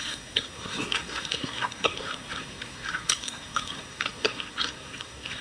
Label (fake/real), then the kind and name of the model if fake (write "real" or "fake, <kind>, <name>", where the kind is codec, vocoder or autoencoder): fake, codec, SNAC